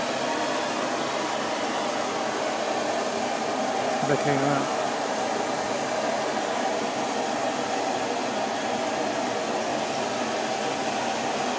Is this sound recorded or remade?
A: recorded